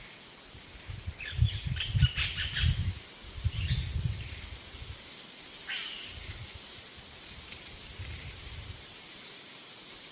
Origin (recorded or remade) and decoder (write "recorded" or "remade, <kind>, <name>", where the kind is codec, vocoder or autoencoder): remade, vocoder, BigVGAN v2